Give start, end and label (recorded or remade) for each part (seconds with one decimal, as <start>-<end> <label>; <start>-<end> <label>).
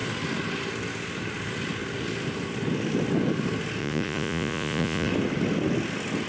0.0-3.8 recorded; 3.8-5.1 remade; 5.1-6.3 recorded